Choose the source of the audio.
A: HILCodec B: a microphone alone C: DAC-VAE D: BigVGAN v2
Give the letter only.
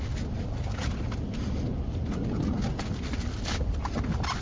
B